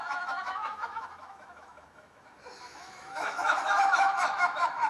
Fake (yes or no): yes